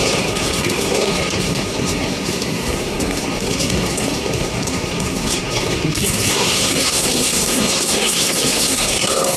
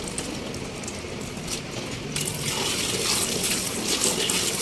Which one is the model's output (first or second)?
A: first